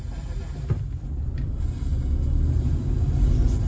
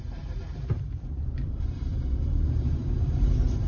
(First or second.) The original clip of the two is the first